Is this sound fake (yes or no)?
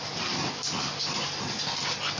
no